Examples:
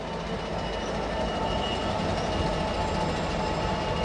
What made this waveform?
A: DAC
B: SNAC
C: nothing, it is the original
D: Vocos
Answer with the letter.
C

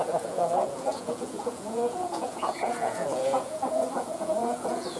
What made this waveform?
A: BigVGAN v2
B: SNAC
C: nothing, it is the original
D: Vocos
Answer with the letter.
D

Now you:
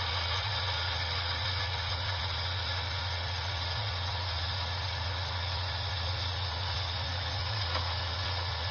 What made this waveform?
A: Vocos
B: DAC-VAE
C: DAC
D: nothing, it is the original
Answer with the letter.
A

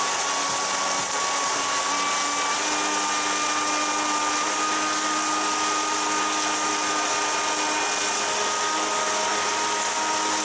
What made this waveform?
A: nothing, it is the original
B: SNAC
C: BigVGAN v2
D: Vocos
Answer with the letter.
A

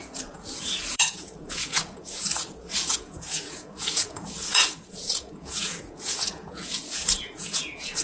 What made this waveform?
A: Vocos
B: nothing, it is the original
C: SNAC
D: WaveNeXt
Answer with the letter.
A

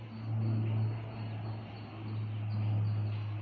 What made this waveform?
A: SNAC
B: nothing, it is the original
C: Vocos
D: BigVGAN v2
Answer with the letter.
B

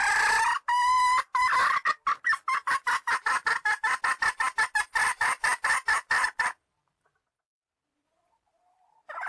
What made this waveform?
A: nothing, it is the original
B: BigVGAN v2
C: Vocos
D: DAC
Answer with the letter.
A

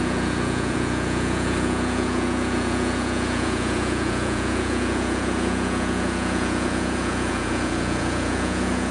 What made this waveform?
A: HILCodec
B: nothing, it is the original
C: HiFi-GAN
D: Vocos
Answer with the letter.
D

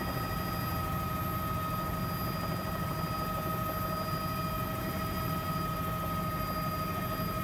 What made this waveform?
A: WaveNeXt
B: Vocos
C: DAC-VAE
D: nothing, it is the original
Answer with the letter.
D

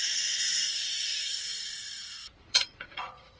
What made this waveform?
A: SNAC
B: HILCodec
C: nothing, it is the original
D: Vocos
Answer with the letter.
D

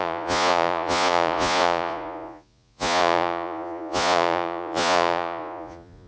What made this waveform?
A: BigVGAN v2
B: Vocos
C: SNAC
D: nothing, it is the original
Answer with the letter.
B